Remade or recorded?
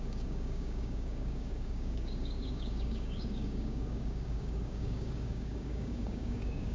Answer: remade